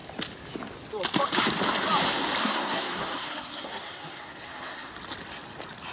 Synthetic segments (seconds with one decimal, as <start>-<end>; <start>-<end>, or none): 2.4-4.9